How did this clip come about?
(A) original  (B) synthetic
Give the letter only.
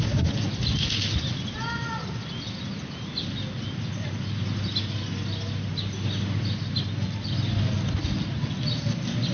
A